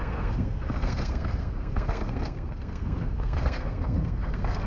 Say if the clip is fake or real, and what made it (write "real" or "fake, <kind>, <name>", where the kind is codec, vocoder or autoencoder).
fake, codec, SNAC